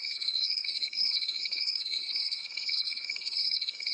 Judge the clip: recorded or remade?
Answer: remade